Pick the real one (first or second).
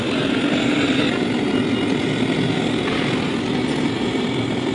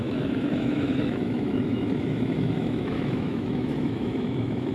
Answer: first